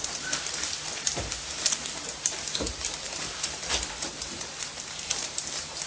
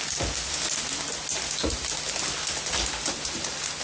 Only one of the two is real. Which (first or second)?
second